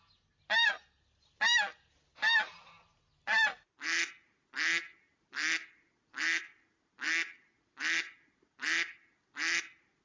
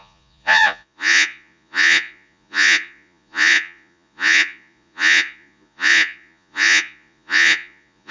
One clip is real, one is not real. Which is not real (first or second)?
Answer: second